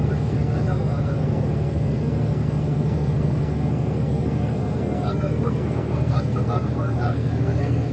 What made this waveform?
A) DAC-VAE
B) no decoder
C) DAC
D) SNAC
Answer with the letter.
D